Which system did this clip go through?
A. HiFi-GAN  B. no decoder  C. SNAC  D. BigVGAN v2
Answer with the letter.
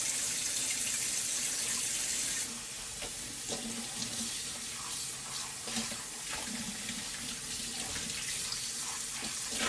B